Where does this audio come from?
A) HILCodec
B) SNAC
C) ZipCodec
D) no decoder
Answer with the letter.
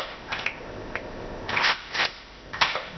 C